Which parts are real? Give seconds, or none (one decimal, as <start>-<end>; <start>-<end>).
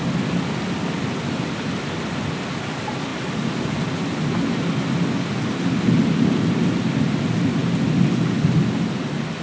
0.0-9.4